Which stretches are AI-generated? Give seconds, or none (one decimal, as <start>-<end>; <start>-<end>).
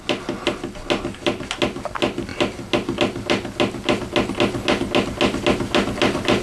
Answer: none